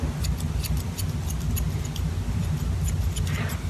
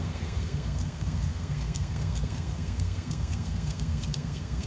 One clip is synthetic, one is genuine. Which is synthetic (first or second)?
second